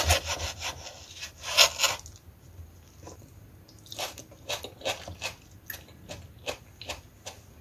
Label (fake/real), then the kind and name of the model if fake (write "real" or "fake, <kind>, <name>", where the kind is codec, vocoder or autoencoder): real